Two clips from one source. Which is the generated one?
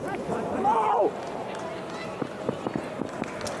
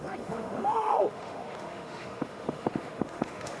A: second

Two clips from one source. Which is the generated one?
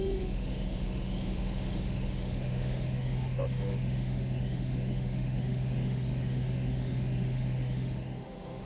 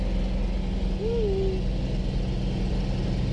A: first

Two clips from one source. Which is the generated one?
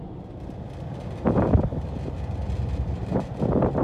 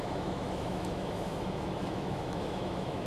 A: second